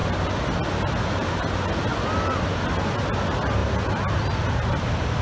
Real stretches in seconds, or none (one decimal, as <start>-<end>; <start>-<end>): 0.0-5.2